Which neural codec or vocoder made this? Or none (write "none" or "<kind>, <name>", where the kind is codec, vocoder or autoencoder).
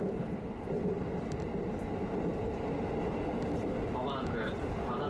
none